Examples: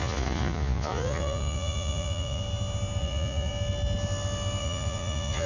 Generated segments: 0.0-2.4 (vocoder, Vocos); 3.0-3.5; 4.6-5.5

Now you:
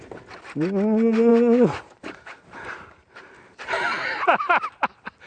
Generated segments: 1.3-4.1 (vocoder, BigVGAN v2)

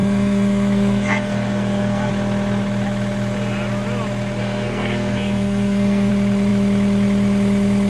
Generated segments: 0.0-2.1 (codec, SNAC); 4.4-6.1

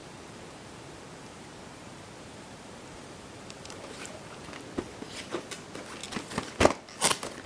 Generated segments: 0.0-4.5 (vocoder, BigVGAN v2)

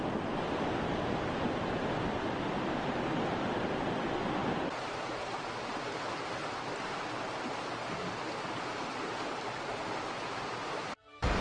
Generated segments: none